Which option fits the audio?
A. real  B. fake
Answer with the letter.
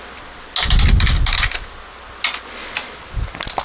A